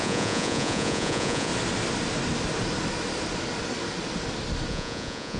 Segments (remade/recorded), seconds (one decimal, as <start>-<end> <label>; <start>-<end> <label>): 0.0-1.5 remade; 1.5-4.7 recorded; 4.7-5.4 remade